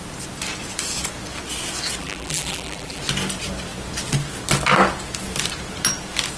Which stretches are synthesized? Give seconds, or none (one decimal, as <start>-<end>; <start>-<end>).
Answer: 2.0-3.0